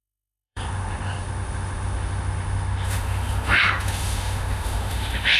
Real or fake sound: fake